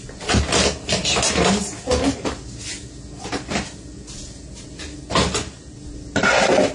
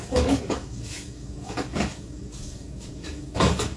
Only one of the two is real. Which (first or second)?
first